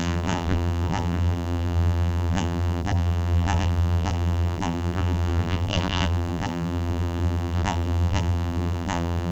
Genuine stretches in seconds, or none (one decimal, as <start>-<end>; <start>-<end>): none